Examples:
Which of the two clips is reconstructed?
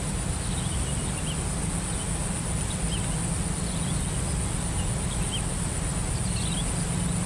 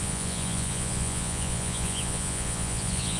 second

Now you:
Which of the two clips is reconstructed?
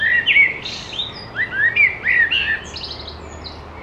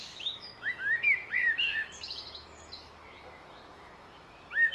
second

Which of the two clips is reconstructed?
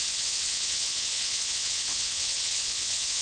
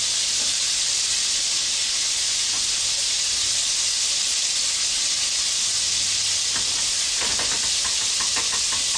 first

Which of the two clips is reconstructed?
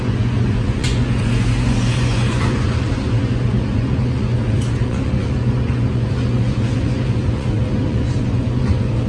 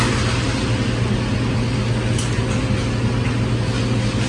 first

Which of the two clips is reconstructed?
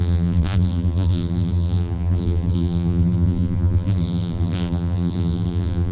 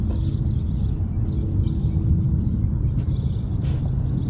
first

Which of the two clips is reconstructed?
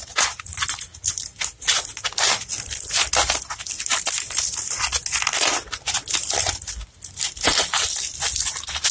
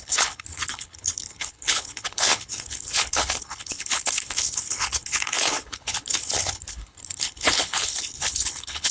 second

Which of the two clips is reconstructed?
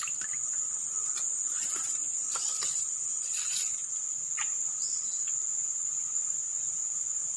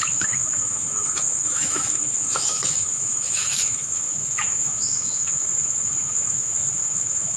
second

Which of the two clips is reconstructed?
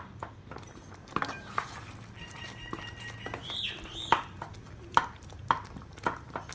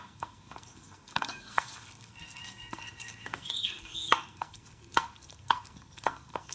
second